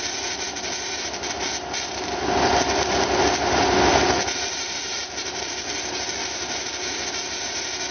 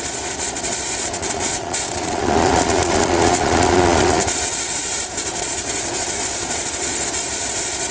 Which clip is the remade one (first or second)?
second